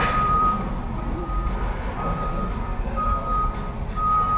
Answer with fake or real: fake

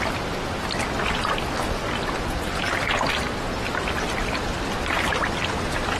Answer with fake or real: real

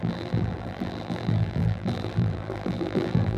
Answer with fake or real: fake